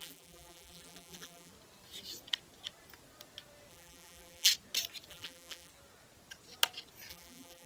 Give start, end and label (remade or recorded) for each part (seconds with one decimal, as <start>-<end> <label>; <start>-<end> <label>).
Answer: 0.0-1.5 remade; 1.5-3.7 recorded; 3.7-4.5 remade; 4.5-5.1 recorded; 5.1-5.7 remade; 5.7-7.1 recorded; 7.1-7.7 remade